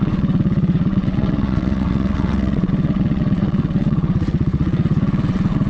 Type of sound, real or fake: fake